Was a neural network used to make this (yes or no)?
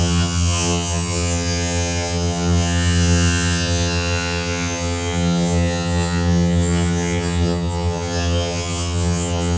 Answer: yes